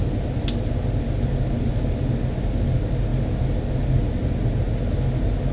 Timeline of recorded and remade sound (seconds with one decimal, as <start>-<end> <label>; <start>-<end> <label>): 0.0-5.5 recorded